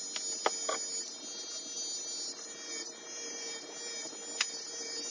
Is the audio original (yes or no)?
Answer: yes